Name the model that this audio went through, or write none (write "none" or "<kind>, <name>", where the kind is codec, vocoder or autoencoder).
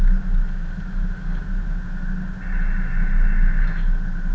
none